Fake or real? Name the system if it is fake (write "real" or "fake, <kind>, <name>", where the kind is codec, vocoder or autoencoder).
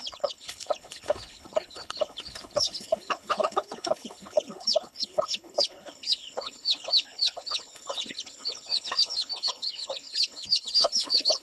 fake, codec, HILCodec